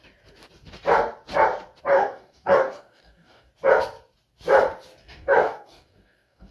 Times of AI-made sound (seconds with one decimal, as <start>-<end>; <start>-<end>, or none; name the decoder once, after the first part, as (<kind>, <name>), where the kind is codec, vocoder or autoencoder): 1.9-3.5 (codec, DAC); 5.0-6.5